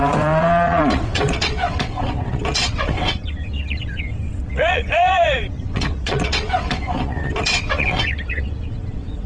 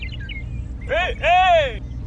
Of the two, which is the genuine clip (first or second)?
second